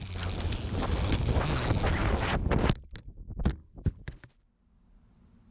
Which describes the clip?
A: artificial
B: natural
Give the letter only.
B